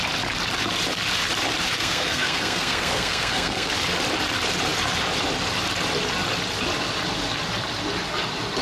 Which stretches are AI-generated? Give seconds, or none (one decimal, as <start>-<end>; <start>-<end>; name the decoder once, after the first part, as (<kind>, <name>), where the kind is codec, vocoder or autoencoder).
1.8-3.7 (codec, SNAC)